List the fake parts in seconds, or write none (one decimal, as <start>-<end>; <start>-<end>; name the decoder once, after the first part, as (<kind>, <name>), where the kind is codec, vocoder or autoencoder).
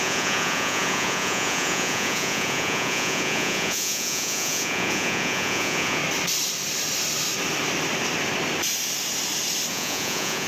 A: 0.0-6.0 (vocoder, Vocos); 9.7-10.5